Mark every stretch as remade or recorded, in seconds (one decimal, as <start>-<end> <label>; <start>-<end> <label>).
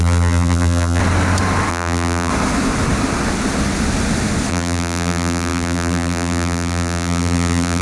0.0-1.0 remade; 1.0-1.7 recorded; 1.7-2.3 remade; 2.3-4.5 recorded; 4.5-7.8 remade